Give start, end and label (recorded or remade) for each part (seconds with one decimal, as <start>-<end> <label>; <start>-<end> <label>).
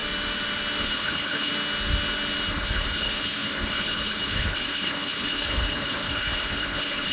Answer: 0.0-0.8 recorded; 0.8-1.5 remade; 1.5-2.5 recorded; 2.5-7.1 remade